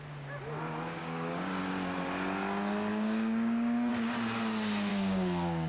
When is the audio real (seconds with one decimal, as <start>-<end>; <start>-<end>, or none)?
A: 0.0-1.0; 1.6-2.9; 3.9-4.9